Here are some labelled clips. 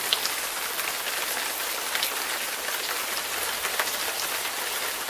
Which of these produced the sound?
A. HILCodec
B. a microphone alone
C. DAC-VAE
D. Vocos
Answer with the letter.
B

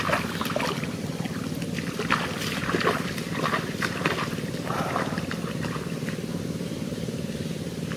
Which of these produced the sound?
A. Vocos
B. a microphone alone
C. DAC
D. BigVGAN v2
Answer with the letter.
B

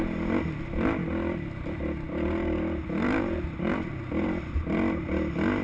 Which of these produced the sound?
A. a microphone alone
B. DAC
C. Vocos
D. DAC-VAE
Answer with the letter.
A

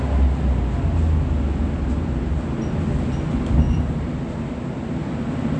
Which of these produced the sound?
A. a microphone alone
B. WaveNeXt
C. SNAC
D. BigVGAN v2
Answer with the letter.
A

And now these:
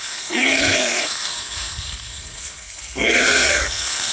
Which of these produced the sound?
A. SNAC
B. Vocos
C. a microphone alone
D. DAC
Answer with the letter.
A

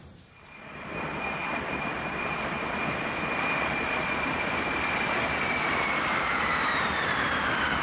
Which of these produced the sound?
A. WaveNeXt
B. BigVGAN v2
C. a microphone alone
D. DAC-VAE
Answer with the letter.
B